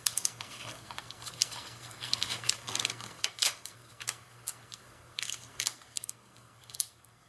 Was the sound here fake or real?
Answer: fake